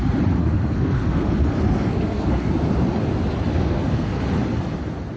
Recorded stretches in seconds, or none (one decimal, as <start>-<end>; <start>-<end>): 0.0-0.4; 2.5-3.5; 4.2-5.2

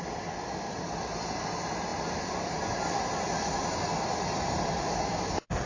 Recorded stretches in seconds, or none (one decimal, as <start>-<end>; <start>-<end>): 0.0-5.7

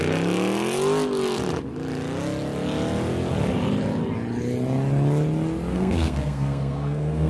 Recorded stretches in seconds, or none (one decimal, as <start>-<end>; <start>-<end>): 0.0-5.7

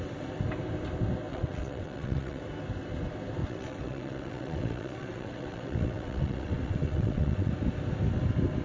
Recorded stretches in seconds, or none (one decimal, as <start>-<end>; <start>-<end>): 0.0-1.3; 2.4-3.4; 7.5-8.6

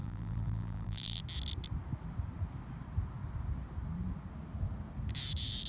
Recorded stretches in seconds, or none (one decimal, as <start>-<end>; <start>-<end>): 1.2-5.7

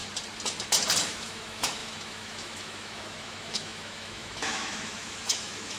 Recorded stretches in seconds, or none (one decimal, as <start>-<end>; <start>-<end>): 0.0-1.0

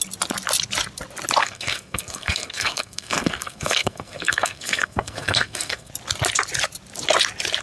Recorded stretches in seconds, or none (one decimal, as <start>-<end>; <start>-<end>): 0.0-1.4; 5.9-7.6